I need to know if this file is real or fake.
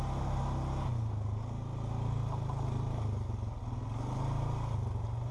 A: real